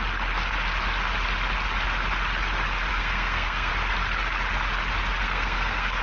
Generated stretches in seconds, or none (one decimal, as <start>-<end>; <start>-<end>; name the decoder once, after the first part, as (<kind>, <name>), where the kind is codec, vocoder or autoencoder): 2.9-3.7 (codec, SNAC); 5.2-6.0